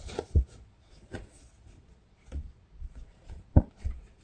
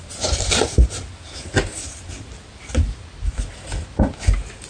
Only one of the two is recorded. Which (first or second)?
second